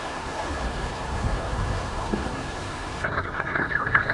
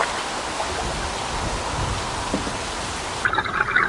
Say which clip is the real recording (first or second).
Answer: second